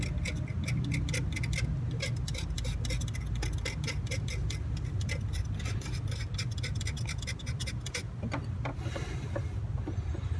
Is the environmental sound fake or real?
real